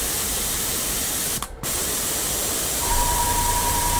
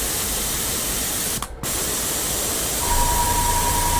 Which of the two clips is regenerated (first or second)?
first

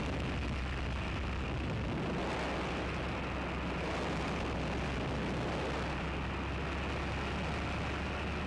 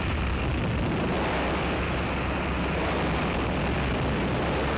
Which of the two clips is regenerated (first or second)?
second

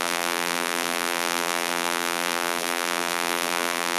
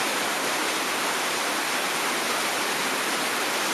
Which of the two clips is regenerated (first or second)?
first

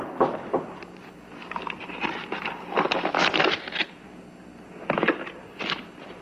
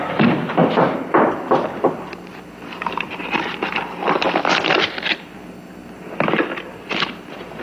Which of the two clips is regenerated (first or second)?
second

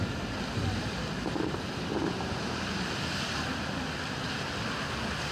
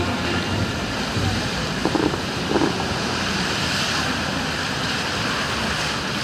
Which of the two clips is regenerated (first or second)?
second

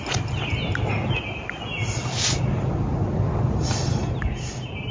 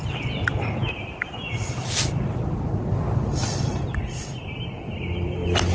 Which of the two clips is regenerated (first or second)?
second